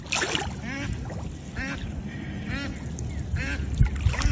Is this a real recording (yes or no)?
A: yes